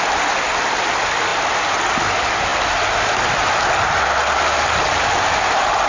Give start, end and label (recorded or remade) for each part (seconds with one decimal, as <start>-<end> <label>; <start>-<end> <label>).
0.0-5.9 recorded